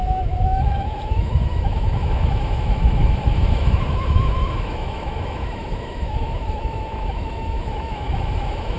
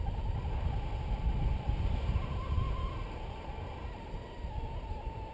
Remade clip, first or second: first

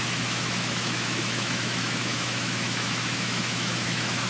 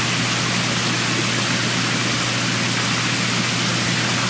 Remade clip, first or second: first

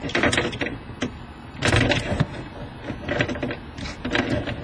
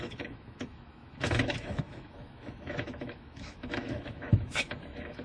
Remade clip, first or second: second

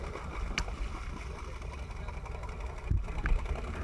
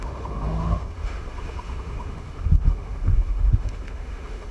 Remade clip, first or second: second